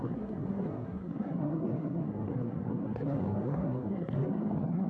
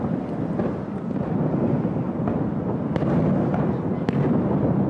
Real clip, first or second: second